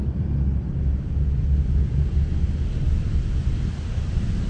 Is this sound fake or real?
real